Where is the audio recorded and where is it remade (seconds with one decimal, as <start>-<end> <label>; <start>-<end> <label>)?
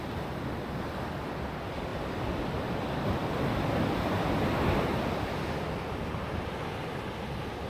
0.0-7.7 recorded